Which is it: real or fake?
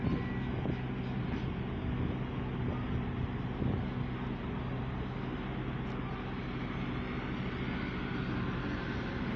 real